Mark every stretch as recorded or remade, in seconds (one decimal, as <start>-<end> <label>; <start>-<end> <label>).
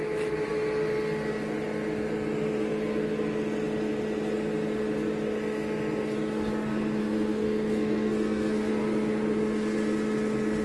0.0-7.0 recorded; 7.0-8.7 remade; 8.7-10.6 recorded